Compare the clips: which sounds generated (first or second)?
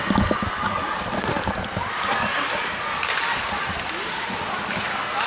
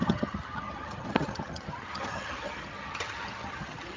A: second